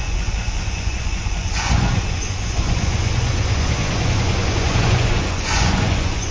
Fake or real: fake